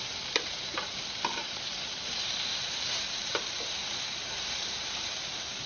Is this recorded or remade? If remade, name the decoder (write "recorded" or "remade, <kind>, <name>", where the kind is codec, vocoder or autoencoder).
remade, vocoder, BigVGAN v2